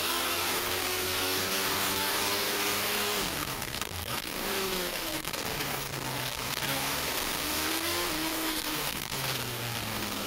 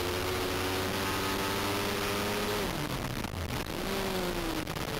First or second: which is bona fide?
second